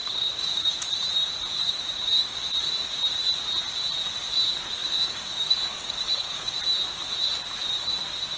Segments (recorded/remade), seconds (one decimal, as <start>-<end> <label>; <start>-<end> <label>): 0.0-0.7 remade; 0.7-1.5 recorded; 1.5-2.4 remade; 2.4-4.8 recorded; 4.8-6.5 remade; 6.5-8.4 recorded